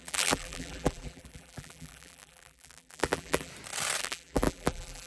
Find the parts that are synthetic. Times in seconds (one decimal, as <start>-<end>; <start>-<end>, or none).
0.0-3.5; 4.0-5.1